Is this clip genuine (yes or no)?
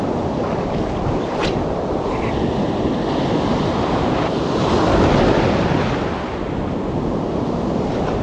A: yes